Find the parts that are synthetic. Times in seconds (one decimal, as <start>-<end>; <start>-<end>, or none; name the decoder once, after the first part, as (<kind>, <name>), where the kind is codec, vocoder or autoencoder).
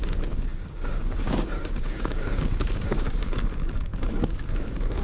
0.0-5.0 (codec, DAC)